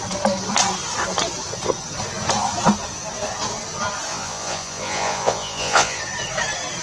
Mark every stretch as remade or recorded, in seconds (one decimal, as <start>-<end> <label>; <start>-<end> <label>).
0.0-4.1 recorded; 4.1-6.0 remade; 6.0-6.8 recorded